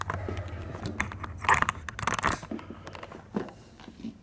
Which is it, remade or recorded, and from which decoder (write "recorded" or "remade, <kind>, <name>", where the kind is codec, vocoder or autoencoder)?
recorded